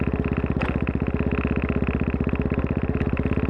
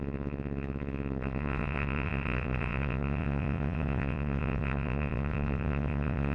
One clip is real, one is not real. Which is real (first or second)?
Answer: first